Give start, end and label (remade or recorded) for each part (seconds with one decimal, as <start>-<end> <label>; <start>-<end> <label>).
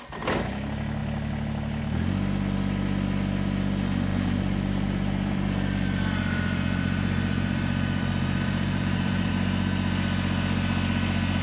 0.0-4.1 recorded; 4.1-9.3 remade; 9.3-11.4 recorded